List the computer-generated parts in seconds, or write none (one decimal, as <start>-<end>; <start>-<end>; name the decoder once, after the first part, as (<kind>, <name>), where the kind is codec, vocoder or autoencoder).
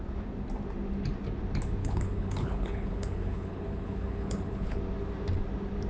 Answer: 1.8-4.8 (codec, HILCodec)